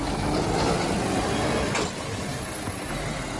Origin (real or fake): real